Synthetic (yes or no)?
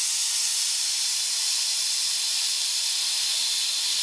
no